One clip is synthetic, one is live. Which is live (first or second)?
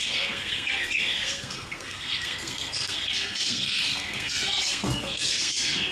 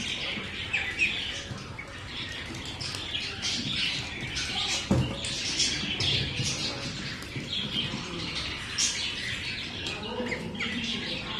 second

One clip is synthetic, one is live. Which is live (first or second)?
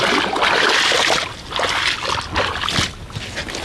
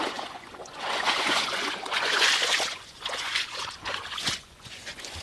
first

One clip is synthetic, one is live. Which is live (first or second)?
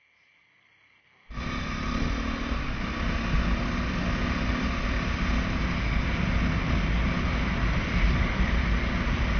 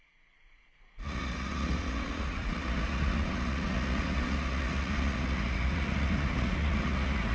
first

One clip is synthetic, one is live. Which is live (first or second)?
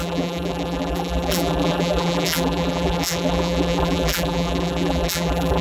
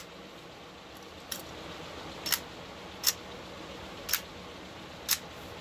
second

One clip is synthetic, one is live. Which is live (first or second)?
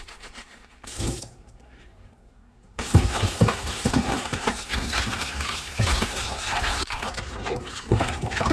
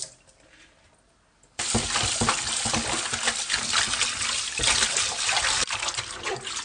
second